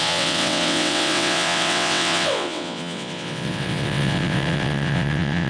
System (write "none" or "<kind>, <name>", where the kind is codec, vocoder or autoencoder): vocoder, WaveNeXt